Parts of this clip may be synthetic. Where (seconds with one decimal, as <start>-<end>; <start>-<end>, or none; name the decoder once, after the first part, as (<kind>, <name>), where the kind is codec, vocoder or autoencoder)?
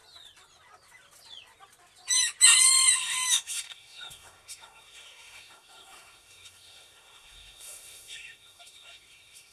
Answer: 2.9-9.5 (autoencoder, DAC-VAE)